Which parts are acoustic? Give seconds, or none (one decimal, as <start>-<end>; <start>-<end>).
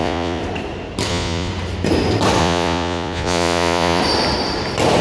0.4-1.1; 1.5-2.4; 4.0-5.0